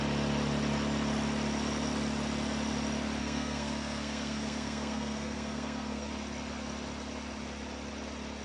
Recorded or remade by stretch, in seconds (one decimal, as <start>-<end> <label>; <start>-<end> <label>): 0.0-3.2 recorded; 3.2-6.1 remade; 6.1-8.4 recorded

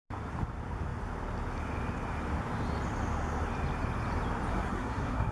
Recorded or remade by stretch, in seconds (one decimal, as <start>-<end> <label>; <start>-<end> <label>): 0.0-4.5 recorded; 4.5-5.3 remade

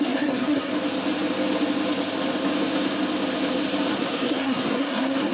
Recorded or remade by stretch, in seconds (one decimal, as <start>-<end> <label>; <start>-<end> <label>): 0.0-0.7 remade; 0.7-3.9 recorded; 3.9-5.3 remade

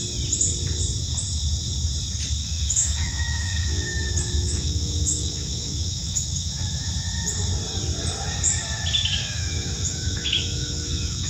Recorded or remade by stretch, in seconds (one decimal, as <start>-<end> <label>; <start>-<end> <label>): 0.0-2.4 recorded; 2.4-6.9 remade; 6.9-9.2 recorded; 9.2-11.3 remade

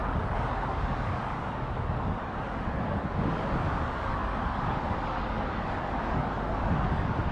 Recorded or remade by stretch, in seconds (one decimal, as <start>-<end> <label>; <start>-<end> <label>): 0.0-7.3 remade

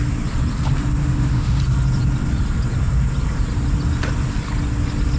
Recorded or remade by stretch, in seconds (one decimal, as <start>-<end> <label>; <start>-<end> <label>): 0.0-1.0 recorded; 1.0-1.6 remade; 1.6-5.2 recorded